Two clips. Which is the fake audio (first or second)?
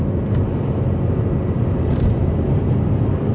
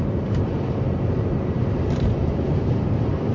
second